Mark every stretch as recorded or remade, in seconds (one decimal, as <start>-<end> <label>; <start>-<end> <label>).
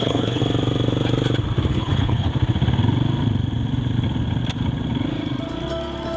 0.0-0.4 remade; 0.4-1.7 recorded; 1.7-2.3 remade; 2.3-6.2 recorded